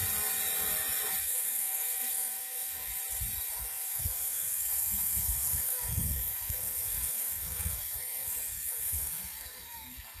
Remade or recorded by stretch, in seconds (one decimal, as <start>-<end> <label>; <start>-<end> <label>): 0.0-1.2 recorded; 1.2-2.9 remade; 2.9-3.6 recorded; 3.6-10.2 remade